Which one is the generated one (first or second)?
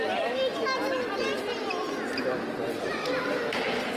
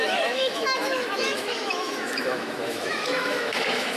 second